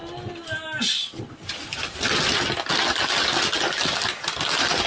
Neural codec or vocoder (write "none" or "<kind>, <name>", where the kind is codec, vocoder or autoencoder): none